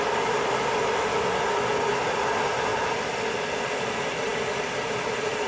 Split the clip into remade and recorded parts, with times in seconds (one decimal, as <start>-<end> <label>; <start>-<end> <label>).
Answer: 0.0-5.5 recorded